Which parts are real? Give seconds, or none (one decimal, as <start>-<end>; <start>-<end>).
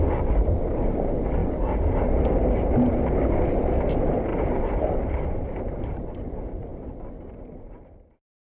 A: 0.0-4.3; 5.9-8.6